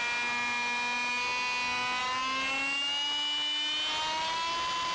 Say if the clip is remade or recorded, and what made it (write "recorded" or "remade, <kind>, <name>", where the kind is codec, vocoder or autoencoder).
recorded